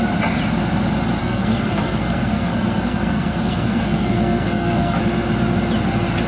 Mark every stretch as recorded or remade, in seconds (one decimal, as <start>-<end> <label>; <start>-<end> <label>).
0.0-1.2 recorded; 1.2-5.0 remade; 5.0-6.3 recorded

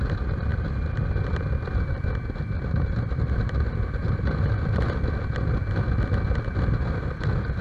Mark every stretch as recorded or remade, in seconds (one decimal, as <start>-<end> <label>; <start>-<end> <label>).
0.0-4.0 recorded; 4.0-4.5 remade; 4.5-7.6 recorded